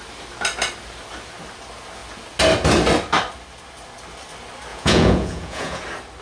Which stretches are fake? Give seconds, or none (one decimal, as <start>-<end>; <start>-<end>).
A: 4.7-5.8